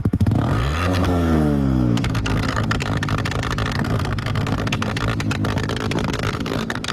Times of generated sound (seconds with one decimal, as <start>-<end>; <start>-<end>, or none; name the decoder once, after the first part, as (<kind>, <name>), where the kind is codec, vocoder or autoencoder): 0.0-2.8 (codec, SNAC); 3.7-4.9; 6.3-6.9